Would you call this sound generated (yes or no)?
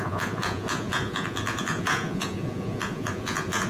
yes